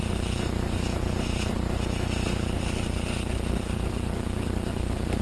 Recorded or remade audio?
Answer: recorded